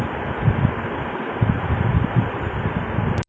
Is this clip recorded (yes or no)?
no